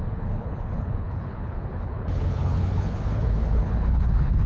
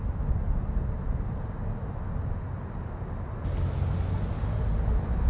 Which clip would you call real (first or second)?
second